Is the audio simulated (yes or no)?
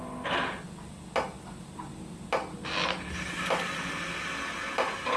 no